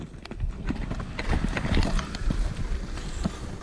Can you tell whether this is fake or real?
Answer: real